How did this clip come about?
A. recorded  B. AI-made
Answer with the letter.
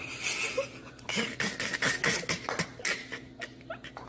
A